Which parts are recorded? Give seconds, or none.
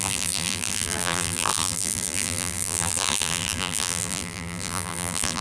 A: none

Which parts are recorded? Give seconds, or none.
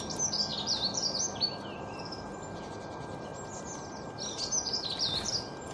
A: 0.0-0.5; 2.6-5.7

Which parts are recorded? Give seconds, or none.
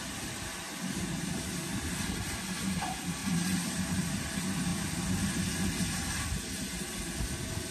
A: 0.0-7.7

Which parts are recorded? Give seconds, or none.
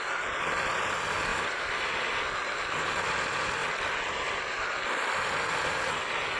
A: 0.0-1.3; 2.8-3.6; 5.9-6.4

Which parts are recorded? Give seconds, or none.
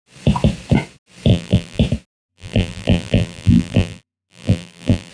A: 0.0-1.3; 1.8-2.3